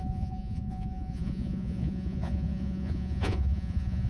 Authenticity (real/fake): fake